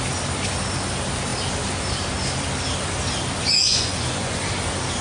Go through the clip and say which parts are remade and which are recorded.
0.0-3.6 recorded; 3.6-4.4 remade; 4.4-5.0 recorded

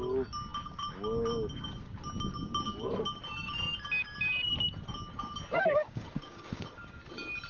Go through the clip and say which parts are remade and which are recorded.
0.0-5.6 recorded; 5.6-7.0 remade; 7.0-7.5 recorded

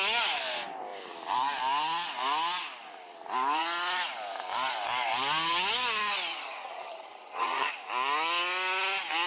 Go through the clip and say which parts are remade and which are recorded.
0.0-6.3 recorded; 6.3-7.7 remade; 7.7-9.3 recorded

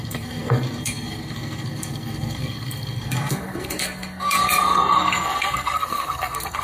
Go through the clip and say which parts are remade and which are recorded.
0.0-6.6 remade

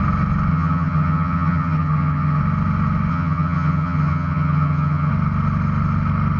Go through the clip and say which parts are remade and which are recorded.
0.0-0.5 recorded; 0.5-2.4 remade; 2.4-3.1 recorded; 3.1-5.1 remade; 5.1-6.4 recorded